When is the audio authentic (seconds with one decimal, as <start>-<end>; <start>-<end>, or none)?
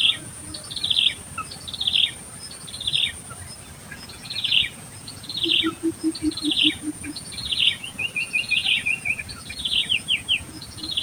0.5-3.9